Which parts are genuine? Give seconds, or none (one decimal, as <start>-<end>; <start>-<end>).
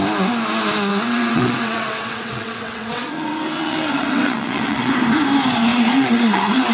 0.0-0.9; 4.9-5.7